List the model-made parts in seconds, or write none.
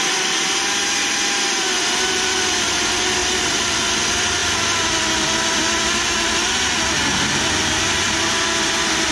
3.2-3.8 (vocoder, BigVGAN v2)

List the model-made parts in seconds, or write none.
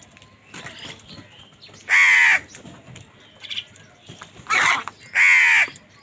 none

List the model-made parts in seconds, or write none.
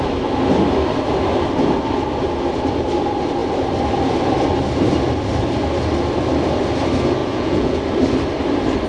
7.2-7.8 (vocoder, Vocos)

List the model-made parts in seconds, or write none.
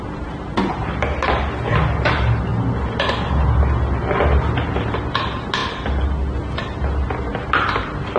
none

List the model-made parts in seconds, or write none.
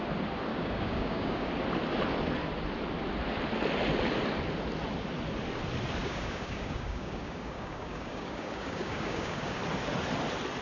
0.5-1.5 (codec, DAC); 6.0-9.6